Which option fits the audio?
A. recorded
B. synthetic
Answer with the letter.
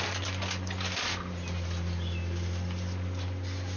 A